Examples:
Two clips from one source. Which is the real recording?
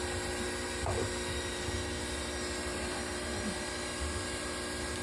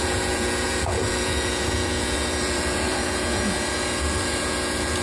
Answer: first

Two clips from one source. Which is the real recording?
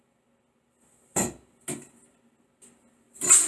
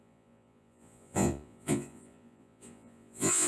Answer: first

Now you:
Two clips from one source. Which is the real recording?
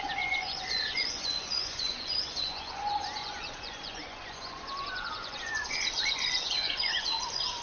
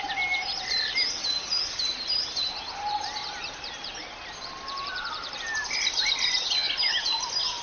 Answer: second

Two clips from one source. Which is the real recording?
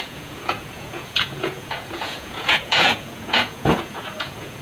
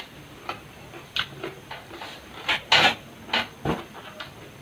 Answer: second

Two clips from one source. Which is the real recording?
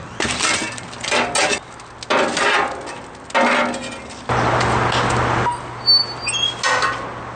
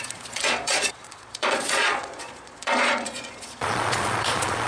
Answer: first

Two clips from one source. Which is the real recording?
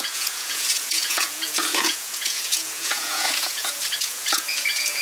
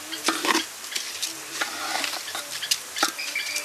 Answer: second